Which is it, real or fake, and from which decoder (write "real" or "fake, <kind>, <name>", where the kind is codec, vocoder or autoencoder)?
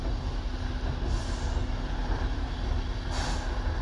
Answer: real